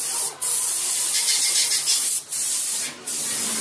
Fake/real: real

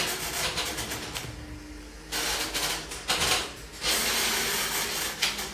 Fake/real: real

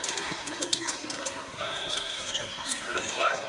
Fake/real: fake